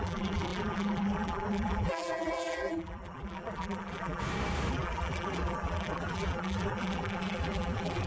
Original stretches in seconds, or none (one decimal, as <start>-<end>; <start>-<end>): 4.2-4.7